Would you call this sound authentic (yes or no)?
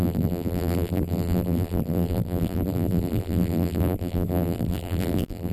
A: no